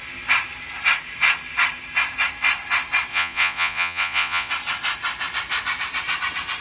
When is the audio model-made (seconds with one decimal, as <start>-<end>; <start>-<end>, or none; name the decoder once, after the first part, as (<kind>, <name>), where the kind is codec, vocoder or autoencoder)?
3.1-4.5 (vocoder, Vocos)